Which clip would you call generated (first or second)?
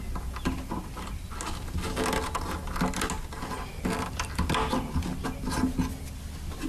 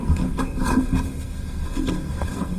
second